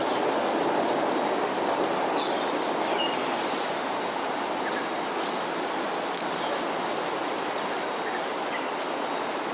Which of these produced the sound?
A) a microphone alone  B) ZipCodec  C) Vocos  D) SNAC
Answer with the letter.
A